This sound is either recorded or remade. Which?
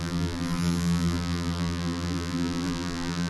remade